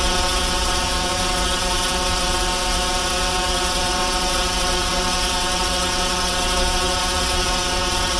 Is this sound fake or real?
fake